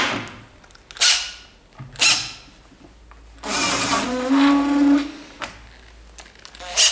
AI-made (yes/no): no